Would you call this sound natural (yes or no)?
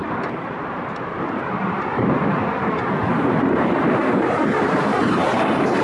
no